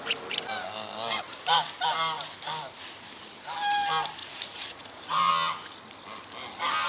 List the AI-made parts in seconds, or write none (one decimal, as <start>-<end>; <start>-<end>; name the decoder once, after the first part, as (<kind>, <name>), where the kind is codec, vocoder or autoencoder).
4.2-5.3 (vocoder, Vocos)